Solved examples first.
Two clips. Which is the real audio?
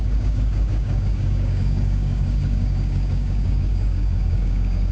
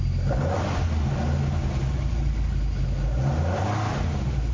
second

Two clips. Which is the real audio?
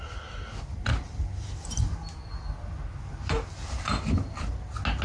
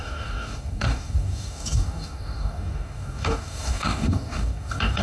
first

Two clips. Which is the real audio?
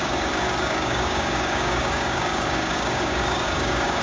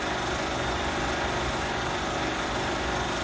second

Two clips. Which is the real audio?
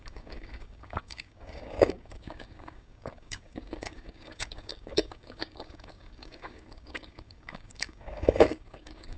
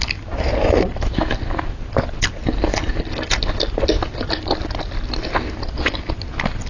second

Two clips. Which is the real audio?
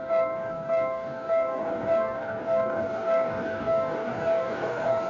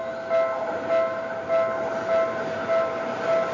second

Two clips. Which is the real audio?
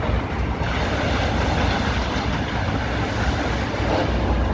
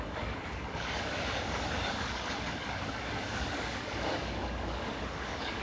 first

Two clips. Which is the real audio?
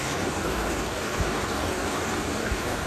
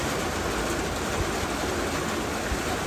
second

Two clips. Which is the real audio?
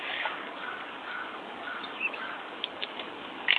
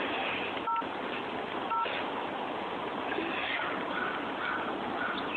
second